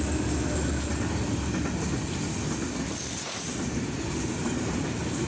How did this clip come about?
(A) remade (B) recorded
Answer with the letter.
B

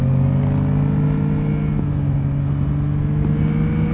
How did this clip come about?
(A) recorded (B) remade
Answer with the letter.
A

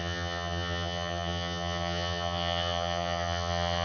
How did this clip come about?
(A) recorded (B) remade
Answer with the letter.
B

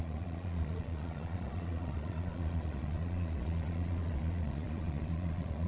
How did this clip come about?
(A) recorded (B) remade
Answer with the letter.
B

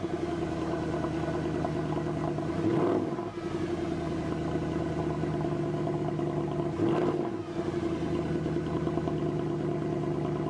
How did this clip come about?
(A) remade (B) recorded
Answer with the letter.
B